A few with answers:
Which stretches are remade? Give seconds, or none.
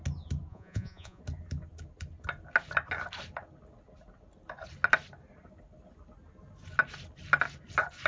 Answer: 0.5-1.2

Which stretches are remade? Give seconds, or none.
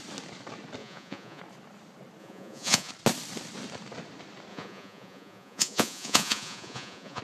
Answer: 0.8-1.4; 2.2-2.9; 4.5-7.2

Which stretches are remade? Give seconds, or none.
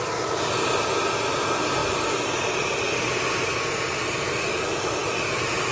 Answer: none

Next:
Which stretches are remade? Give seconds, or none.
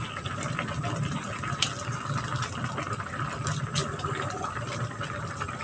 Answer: none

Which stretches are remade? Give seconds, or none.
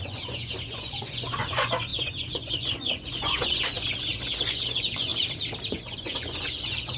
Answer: 0.0-5.1; 5.7-7.0